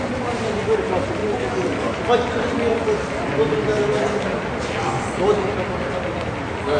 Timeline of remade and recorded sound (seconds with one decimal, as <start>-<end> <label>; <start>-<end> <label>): 0.0-6.8 recorded

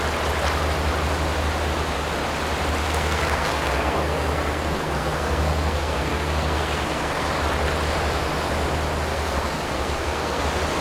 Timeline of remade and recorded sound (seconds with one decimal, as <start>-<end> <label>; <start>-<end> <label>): 0.0-2.8 recorded; 2.8-7.3 remade; 7.3-9.1 recorded; 9.1-10.4 remade; 10.4-10.8 recorded